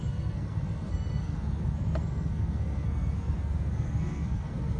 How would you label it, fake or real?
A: fake